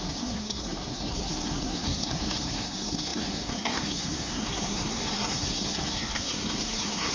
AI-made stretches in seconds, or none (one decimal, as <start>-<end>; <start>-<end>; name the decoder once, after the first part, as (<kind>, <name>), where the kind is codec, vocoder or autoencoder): 0.0-7.1 (codec, SNAC)